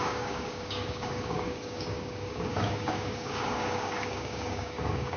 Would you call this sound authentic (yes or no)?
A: no